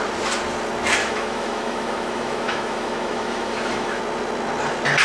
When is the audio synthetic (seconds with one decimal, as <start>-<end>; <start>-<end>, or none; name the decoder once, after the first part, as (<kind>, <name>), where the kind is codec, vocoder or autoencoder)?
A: 1.0-4.0 (autoencoder, DAC-VAE)